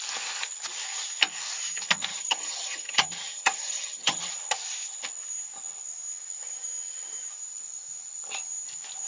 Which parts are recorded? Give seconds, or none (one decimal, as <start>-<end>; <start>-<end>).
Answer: 0.0-2.1; 4.3-9.1